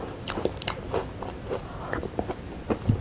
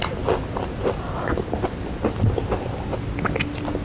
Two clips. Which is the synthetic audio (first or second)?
first